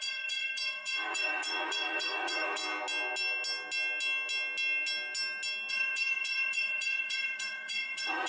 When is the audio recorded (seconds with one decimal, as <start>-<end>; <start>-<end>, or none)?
2.6-5.7